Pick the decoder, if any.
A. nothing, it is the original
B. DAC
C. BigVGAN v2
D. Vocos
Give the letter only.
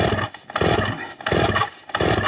A